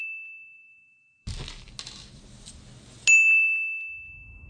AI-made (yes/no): no